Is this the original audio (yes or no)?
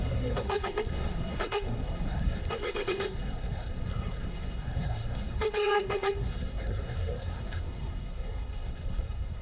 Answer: no